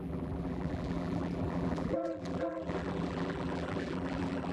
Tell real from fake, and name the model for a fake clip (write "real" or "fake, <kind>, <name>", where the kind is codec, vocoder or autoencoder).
fake, vocoder, BigVGAN v2